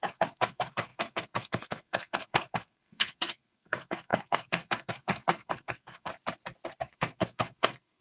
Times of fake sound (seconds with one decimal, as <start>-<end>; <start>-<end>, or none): 0.0-6.1; 6.8-8.0